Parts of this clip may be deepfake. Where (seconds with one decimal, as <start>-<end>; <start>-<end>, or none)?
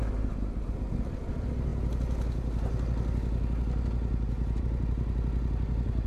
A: none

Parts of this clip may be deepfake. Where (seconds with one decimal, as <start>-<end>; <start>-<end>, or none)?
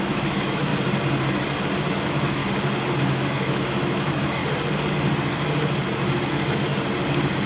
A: 0.0-0.7; 1.9-2.4; 3.0-4.4; 6.0-6.7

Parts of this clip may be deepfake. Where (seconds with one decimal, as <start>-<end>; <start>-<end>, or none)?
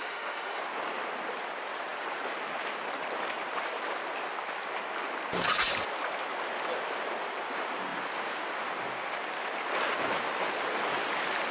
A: 0.0-0.6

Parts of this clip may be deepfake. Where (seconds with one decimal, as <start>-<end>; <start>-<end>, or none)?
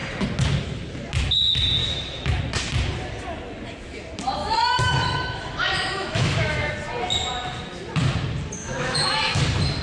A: 1.8-2.4; 4.4-6.7; 8.6-9.4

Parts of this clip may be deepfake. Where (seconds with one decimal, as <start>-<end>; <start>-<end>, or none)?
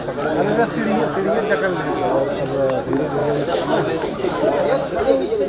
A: 3.2-4.5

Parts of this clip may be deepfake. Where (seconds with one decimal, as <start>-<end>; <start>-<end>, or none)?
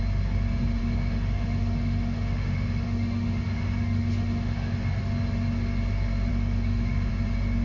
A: 0.8-5.0; 6.3-7.1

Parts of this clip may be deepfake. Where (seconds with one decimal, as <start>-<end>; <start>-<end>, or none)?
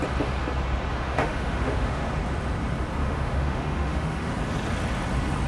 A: 0.9-2.1; 3.0-4.3